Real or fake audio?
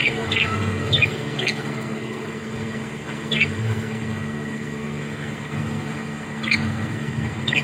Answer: fake